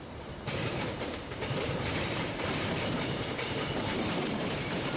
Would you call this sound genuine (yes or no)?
no